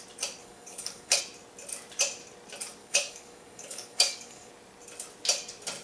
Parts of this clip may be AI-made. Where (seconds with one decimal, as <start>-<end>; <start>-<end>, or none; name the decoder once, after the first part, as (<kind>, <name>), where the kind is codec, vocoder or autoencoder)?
0.4-1.2 (codec, DAC); 2.8-4.5